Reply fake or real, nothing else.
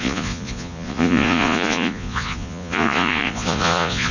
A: fake